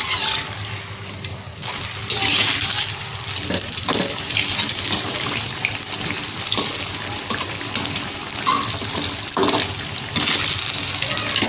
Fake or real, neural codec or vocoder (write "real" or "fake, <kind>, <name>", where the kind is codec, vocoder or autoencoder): real